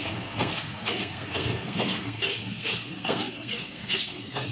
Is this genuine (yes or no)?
no